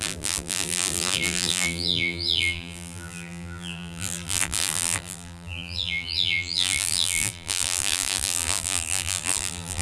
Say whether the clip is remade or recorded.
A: remade